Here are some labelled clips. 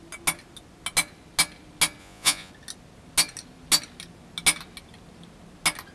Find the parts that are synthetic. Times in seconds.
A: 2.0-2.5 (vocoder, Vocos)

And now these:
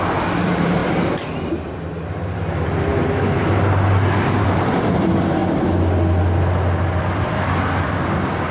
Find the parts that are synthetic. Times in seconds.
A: 0.0-2.9 (vocoder, BigVGAN v2); 4.4-5.4; 7.0-8.5

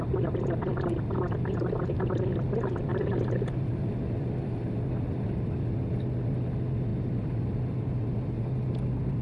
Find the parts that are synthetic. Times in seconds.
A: 2.9-3.9 (vocoder, BigVGAN v2); 6.9-8.7

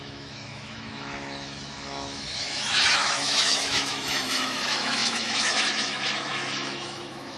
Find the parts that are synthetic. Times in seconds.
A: 0.0-7.4 (autoencoder, DAC-VAE)

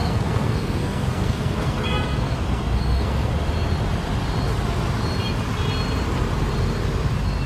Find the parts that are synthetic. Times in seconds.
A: 0.0-3.3 (codec, SNAC)